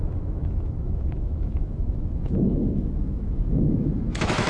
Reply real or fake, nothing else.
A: fake